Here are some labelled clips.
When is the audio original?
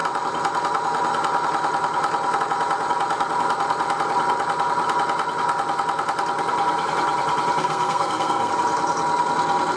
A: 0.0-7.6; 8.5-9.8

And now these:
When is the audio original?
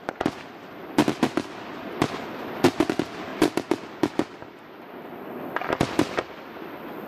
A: 0.0-7.1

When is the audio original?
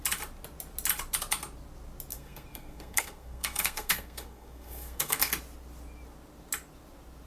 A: 0.0-2.1; 5.3-7.3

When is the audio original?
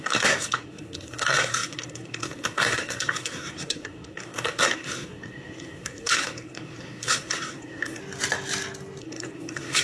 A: 8.0-9.0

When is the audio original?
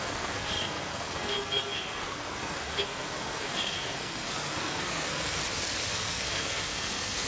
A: 5.4-5.9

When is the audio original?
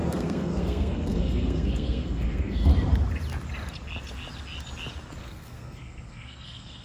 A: 2.7-5.2